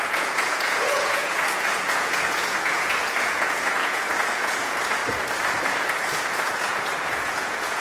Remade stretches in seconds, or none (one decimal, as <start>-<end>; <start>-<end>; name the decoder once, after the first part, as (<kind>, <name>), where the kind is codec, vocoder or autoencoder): 0.0-5.0 (vocoder, Vocos); 5.6-7.8